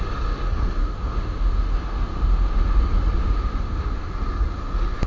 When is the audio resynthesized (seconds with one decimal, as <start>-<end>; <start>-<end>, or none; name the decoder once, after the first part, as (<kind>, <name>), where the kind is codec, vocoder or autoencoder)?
0.8-2.8 (autoencoder, DAC-VAE); 3.2-4.1